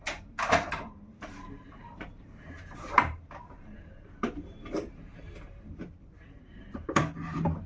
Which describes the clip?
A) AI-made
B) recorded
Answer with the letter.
A